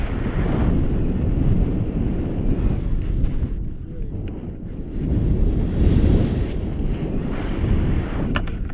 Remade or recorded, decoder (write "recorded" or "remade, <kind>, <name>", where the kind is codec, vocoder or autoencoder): recorded